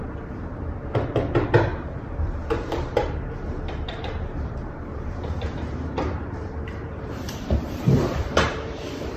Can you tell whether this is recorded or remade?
remade